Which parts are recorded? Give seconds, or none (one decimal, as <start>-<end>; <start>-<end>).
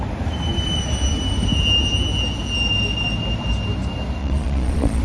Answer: 0.0-4.2